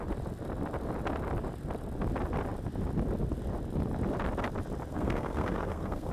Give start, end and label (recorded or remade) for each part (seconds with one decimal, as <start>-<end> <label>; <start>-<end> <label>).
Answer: 0.0-4.9 recorded; 4.9-6.1 remade